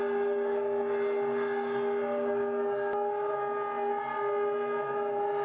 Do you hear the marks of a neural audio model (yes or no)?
no